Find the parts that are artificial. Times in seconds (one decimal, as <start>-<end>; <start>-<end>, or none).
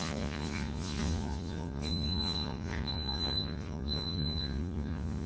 0.0-5.3